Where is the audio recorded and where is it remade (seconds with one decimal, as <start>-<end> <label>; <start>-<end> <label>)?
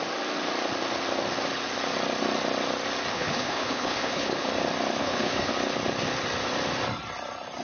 0.0-3.1 recorded; 3.1-4.5 remade; 4.5-5.0 recorded; 5.0-5.5 remade; 5.5-7.6 recorded